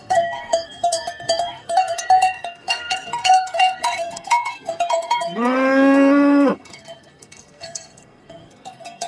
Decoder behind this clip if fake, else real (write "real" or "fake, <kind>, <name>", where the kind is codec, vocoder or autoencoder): fake, codec, SNAC